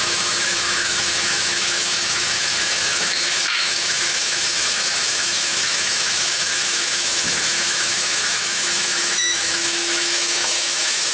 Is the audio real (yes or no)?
no